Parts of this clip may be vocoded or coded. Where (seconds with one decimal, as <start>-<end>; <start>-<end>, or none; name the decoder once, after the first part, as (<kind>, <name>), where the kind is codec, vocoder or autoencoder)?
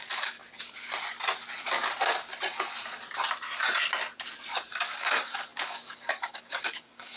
0.0-0.4 (codec, DAC); 4.7-7.2